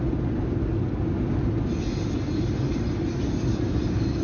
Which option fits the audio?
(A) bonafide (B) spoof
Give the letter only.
A